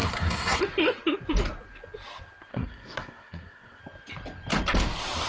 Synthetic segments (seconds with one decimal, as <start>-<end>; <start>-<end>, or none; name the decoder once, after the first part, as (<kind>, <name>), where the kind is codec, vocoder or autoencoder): 0.0-0.6 (codec, SNAC); 2.5-3.8